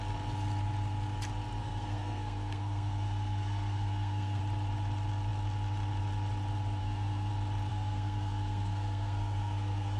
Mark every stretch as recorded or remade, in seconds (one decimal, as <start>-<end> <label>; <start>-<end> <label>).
0.0-1.6 recorded; 1.6-4.4 remade; 4.4-6.8 recorded; 6.8-7.3 remade; 7.3-7.7 recorded; 7.7-10.0 remade